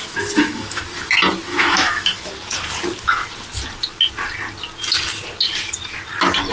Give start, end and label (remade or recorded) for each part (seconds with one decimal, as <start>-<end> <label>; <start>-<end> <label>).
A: 0.0-0.8 remade; 0.8-1.5 recorded; 1.5-2.3 remade; 2.3-6.5 recorded